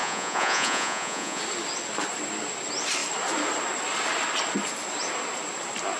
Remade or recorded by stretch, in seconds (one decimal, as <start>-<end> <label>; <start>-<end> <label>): 0.0-1.4 remade; 1.4-6.0 recorded